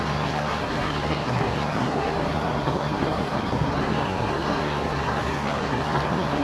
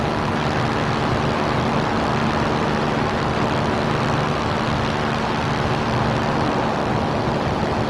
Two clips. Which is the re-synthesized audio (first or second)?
first